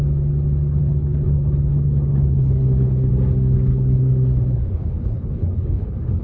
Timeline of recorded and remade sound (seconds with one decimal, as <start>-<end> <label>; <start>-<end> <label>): 0.0-0.7 recorded; 0.7-3.1 remade; 3.1-3.7 recorded; 3.7-6.2 remade